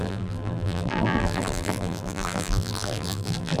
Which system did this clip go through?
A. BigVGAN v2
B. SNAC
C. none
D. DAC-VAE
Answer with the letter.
A